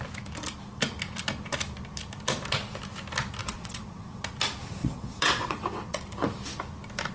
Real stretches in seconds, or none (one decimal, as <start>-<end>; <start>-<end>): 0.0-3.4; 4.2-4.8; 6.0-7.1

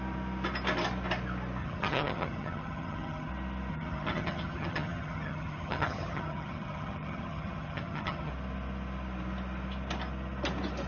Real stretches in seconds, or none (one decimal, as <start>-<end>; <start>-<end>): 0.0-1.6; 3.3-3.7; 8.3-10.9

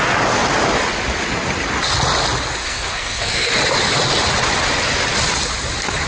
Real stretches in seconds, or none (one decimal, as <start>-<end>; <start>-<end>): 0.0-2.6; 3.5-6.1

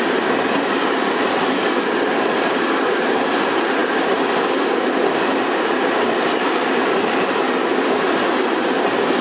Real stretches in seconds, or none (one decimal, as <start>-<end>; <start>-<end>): 0.0-9.2

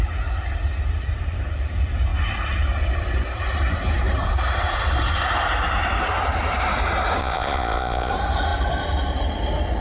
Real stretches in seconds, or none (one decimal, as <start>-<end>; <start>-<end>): 0.0-7.2; 8.1-9.8

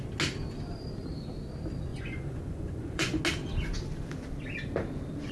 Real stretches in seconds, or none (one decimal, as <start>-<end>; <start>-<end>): 0.0-1.9; 3.2-5.3

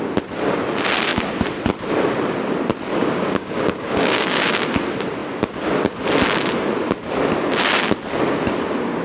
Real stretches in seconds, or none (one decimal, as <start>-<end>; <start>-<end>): 0.0-2.9; 4.5-9.0